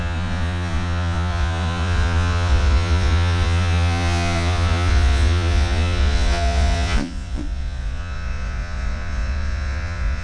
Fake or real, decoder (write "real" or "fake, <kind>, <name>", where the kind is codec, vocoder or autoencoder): fake, vocoder, Vocos